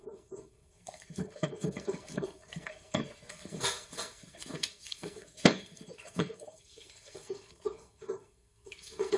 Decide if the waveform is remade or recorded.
remade